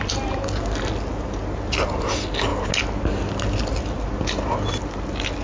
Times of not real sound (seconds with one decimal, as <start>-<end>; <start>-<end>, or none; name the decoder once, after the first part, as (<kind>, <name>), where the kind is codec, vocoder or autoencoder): none